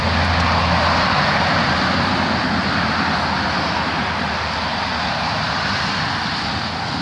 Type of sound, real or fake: real